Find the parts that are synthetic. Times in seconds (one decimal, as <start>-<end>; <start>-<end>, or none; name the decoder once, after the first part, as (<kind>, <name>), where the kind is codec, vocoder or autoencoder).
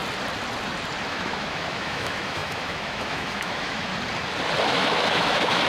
1.1-3.9 (autoencoder, DAC-VAE); 4.6-5.7